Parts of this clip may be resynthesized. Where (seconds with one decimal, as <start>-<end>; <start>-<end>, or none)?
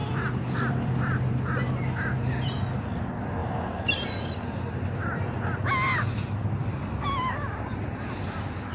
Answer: 0.0-1.3; 6.6-7.9